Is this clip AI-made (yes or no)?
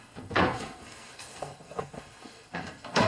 yes